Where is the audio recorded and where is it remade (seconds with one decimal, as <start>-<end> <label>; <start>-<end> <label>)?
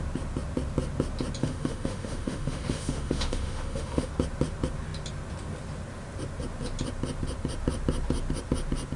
0.0-1.4 recorded; 1.4-4.1 remade; 4.1-9.0 recorded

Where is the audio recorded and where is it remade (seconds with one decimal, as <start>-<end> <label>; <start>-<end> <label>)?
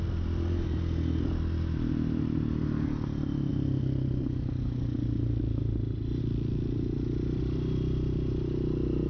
0.0-9.1 recorded